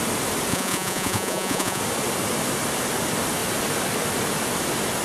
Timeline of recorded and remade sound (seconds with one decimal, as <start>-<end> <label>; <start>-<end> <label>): 0.0-0.5 recorded; 0.5-1.8 remade; 1.8-5.0 recorded